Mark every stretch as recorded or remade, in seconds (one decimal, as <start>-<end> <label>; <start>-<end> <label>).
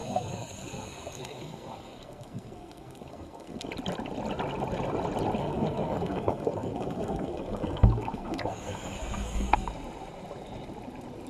0.0-3.7 remade; 3.7-5.4 recorded; 5.4-9.7 remade; 9.7-11.3 recorded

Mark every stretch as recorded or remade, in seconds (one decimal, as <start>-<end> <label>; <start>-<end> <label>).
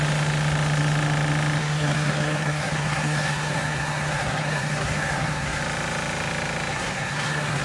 0.0-1.6 recorded; 1.6-5.6 remade; 5.6-6.7 recorded; 6.7-7.6 remade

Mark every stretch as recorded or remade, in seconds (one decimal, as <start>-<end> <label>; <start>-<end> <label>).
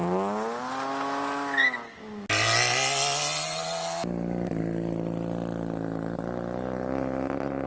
0.0-7.7 recorded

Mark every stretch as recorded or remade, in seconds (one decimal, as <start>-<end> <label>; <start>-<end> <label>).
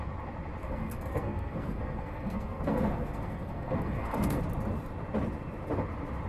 0.0-0.6 recorded; 0.6-4.4 remade; 4.4-6.3 recorded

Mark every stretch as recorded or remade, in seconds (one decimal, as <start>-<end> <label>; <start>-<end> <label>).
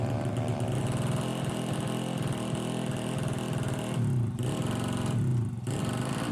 0.0-6.3 recorded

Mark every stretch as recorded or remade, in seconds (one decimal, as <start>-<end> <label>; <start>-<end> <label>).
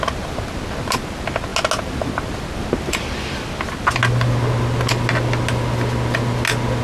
0.0-6.8 recorded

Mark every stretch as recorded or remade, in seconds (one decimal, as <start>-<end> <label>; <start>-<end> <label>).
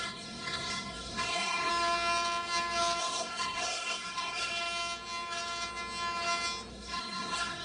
0.0-1.7 remade; 1.7-3.0 recorded; 3.0-4.5 remade; 4.5-6.7 recorded; 6.7-7.6 remade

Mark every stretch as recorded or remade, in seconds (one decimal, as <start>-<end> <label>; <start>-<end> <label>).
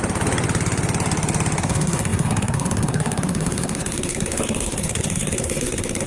0.0-1.6 recorded; 1.6-6.1 remade